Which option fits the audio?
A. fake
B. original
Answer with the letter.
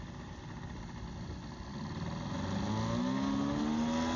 B